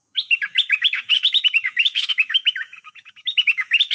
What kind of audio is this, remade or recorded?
remade